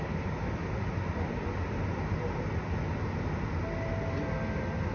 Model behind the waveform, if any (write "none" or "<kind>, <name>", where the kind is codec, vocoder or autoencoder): none